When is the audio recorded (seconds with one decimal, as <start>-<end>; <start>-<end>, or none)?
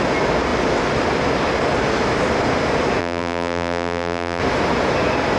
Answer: 0.0-3.0; 4.4-5.4